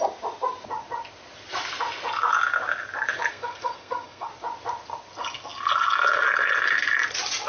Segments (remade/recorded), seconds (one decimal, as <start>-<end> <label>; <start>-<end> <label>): 0.0-3.3 recorded; 3.3-4.3 remade; 4.3-7.5 recorded

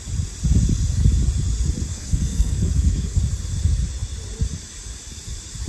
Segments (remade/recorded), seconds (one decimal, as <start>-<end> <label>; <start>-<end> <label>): 0.0-1.9 recorded; 1.9-3.2 remade; 3.2-5.7 recorded

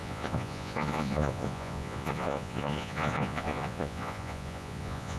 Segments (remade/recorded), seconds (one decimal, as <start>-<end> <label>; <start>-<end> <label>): 0.0-5.2 remade

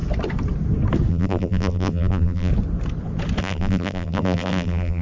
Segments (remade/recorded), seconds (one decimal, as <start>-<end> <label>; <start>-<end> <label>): 0.0-1.1 recorded; 1.1-2.5 remade; 2.5-3.4 recorded; 3.4-5.0 remade

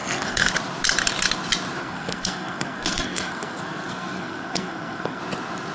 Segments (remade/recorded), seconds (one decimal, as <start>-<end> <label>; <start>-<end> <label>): 0.0-0.5 remade; 0.5-1.8 recorded; 1.8-5.2 remade; 5.2-5.7 recorded